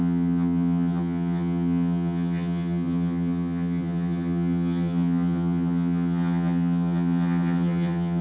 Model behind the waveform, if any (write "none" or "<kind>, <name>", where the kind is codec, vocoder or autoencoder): vocoder, HiFi-GAN